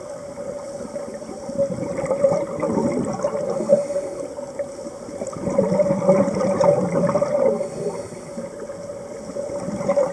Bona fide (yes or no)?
yes